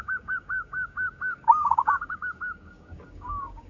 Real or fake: fake